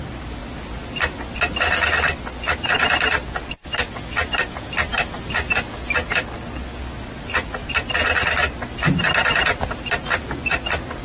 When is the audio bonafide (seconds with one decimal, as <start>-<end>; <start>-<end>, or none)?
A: 0.0-11.0

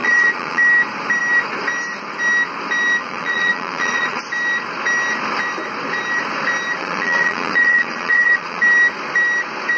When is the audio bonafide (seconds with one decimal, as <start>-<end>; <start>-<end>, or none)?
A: 0.6-3.0; 4.2-6.8; 8.6-9.8

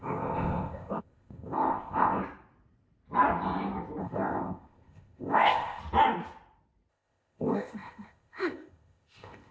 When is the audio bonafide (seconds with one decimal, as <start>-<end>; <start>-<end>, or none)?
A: 2.2-4.0; 5.8-6.9

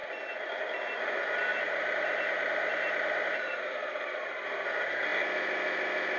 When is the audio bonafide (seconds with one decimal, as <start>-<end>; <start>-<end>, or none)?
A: 0.0-1.5; 4.3-6.2

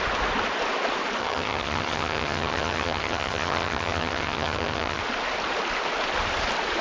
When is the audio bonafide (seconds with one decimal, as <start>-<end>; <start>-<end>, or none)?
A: 0.0-1.2; 5.0-6.8